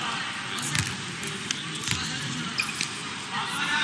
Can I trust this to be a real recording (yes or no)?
yes